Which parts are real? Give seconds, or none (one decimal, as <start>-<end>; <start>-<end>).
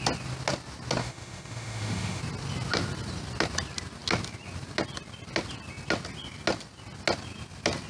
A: 0.0-1.0; 2.2-7.9